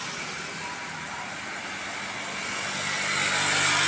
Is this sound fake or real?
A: real